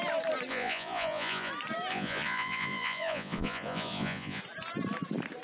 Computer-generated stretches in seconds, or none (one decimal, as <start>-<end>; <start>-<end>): 0.5-1.5; 1.9-4.4